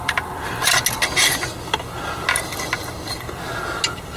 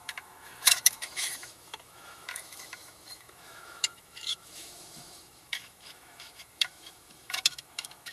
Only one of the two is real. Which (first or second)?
first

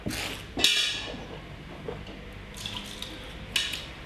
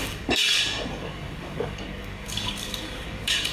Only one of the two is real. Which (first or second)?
first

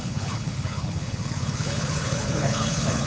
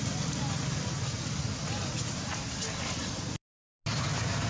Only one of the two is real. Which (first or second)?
second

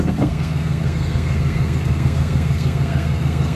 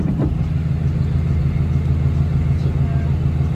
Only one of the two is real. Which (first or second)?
second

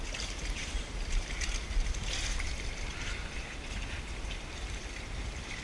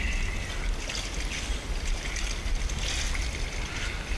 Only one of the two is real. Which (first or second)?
second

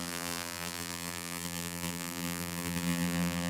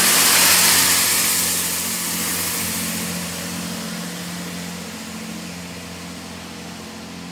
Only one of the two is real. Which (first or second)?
second